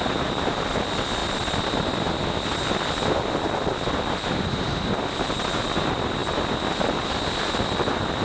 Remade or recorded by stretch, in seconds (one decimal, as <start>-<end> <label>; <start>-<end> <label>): 0.0-8.2 recorded